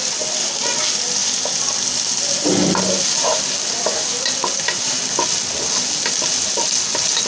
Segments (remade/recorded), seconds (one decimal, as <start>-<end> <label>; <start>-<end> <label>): 0.0-7.3 recorded